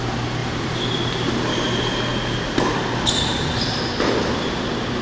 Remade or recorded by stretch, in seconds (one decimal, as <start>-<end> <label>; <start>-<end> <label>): 0.0-0.4 recorded; 0.4-1.3 remade; 1.3-5.0 recorded